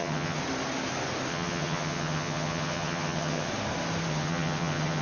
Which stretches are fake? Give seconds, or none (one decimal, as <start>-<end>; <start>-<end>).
0.0-0.4; 1.3-3.5; 4.1-5.0